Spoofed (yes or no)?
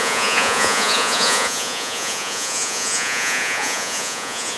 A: yes